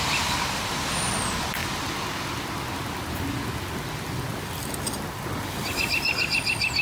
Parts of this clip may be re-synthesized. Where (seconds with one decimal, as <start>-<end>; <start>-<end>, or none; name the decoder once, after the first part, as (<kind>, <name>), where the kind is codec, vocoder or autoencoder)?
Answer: none